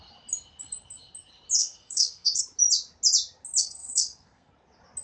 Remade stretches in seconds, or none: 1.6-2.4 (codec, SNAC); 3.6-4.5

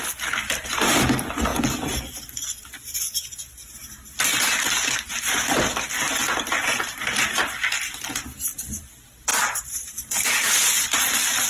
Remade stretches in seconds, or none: 4.3-6.5 (vocoder, BigVGAN v2); 9.3-10.5